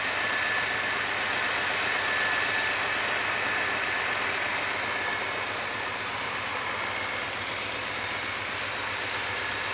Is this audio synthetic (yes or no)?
no